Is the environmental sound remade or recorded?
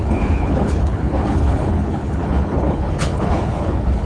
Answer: remade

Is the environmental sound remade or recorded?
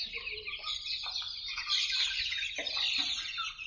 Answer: recorded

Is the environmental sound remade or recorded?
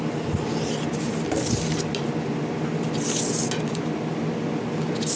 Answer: recorded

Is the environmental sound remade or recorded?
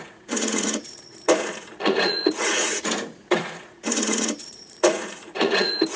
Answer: remade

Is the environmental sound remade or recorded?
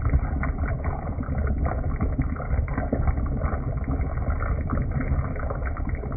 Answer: recorded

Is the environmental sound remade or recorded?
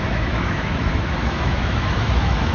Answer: remade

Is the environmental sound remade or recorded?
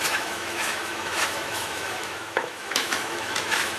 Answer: remade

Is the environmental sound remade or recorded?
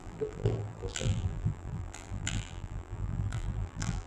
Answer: remade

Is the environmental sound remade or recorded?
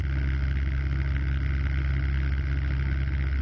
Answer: recorded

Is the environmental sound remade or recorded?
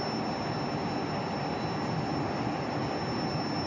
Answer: recorded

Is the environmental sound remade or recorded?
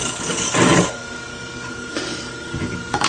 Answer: remade